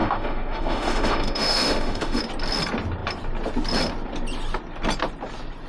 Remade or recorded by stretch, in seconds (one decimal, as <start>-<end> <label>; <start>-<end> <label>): 0.0-2.2 remade; 2.2-5.7 recorded